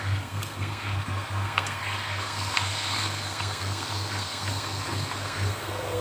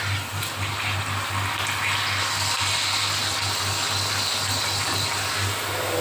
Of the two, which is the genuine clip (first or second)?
second